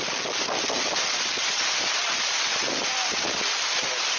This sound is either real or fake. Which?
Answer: real